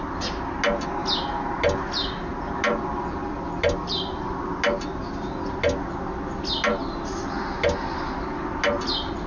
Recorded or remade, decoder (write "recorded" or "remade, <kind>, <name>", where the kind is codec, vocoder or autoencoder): recorded